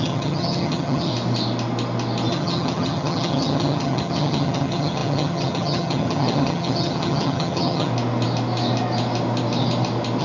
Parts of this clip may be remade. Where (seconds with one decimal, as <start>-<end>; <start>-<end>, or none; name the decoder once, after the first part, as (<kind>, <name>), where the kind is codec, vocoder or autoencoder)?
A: 0.0-1.1 (vocoder, HiFi-GAN); 2.3-7.9